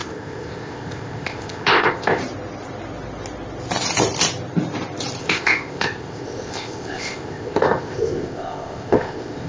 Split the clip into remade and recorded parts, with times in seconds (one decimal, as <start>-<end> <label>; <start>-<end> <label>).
0.0-2.2 remade; 2.2-5.2 recorded; 5.2-9.5 remade